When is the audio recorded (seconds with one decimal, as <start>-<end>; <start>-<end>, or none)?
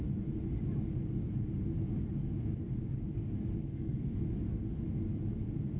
0.0-3.6; 4.2-5.8